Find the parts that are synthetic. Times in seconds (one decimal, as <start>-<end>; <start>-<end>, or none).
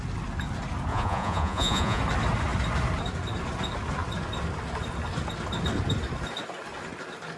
0.9-2.0